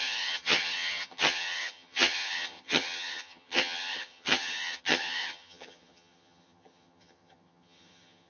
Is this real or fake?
fake